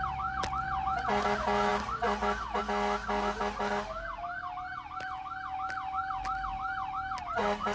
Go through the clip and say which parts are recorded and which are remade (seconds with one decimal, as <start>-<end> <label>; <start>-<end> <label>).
0.0-7.7 recorded